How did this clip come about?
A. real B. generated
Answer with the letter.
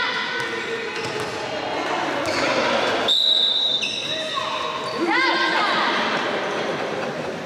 A